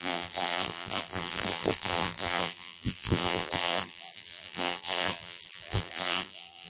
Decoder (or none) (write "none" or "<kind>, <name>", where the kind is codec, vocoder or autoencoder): vocoder, BigVGAN v2